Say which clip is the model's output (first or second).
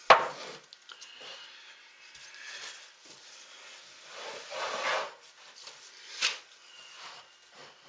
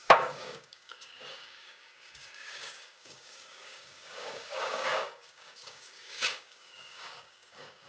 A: second